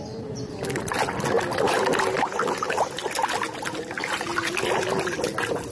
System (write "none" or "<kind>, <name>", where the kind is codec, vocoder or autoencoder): none